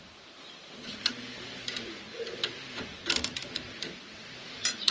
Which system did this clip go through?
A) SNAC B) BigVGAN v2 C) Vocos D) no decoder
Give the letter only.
B